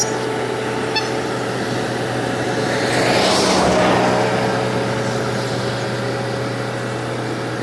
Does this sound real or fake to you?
real